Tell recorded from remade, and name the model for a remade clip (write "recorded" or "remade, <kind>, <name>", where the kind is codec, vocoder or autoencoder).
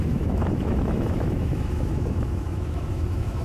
remade, autoencoder, DAC-VAE